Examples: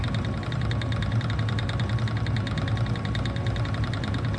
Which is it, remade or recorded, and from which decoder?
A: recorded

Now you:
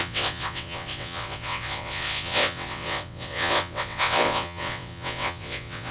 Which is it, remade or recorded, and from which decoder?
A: remade, vocoder, WaveNeXt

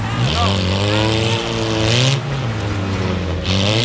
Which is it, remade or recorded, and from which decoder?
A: recorded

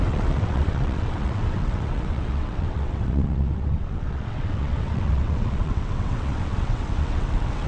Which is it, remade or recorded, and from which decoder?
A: remade, vocoder, WaveNeXt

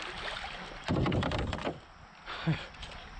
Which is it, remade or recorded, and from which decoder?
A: recorded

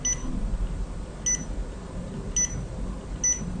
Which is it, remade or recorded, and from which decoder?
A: recorded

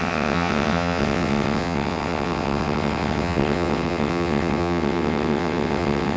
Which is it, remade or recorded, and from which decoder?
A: remade, vocoder, WaveNeXt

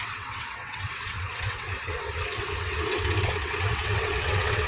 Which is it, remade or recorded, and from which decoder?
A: remade, vocoder, WaveNeXt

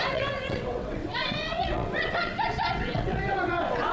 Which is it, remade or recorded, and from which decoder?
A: remade, vocoder, WaveNeXt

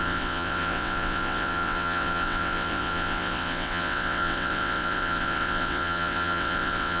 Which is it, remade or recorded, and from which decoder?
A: remade, vocoder, WaveNeXt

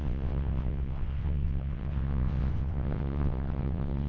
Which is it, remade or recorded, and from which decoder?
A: remade, vocoder, WaveNeXt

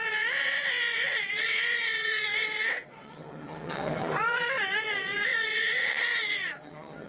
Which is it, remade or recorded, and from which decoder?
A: remade, vocoder, WaveNeXt